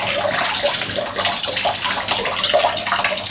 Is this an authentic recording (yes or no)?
yes